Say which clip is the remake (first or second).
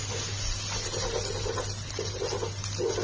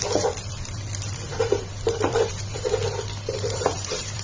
second